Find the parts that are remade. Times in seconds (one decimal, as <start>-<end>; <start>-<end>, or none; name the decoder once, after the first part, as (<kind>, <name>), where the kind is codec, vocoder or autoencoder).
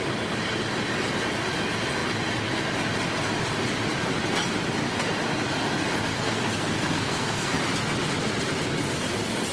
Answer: 6.1-7.6 (codec, SNAC)